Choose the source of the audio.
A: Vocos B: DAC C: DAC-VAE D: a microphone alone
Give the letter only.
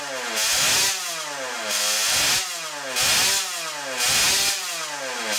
D